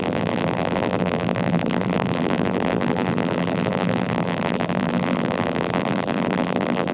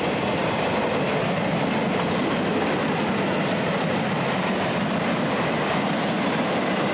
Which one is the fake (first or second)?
first